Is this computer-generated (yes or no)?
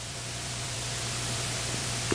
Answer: yes